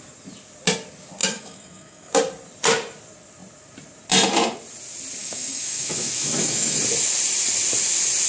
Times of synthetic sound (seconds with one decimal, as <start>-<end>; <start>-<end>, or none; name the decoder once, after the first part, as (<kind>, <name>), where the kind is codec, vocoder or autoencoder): 1.2-2.1 (autoencoder, DAC-VAE); 5.2-6.8